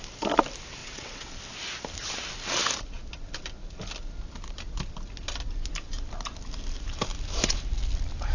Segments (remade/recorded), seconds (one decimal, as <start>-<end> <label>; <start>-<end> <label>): 0.0-0.8 recorded; 0.8-1.4 remade; 1.4-8.3 recorded